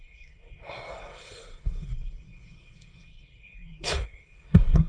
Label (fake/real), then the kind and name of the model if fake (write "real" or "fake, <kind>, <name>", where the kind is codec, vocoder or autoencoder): fake, codec, SNAC